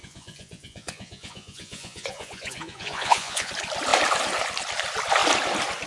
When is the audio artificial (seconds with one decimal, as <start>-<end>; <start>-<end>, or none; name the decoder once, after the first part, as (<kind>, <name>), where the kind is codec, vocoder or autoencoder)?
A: 0.0-3.5 (vocoder, Vocos)